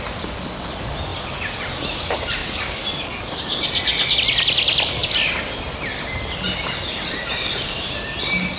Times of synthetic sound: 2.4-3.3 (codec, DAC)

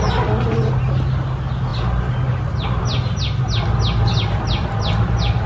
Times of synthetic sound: none

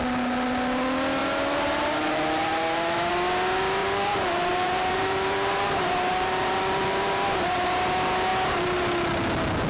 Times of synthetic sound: 1.2-3.1 (vocoder, BigVGAN v2); 3.8-7.7

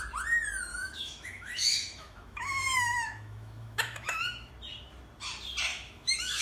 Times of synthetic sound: 0.7-4.5 (autoencoder, DAC-VAE); 5.7-6.4

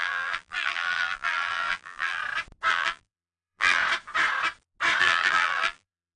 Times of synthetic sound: 0.0-2.2 (vocoder, BigVGAN v2); 2.7-3.8; 5.0-6.2

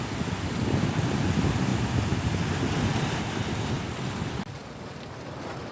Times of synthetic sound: none